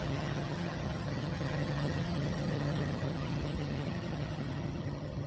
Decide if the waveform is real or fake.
fake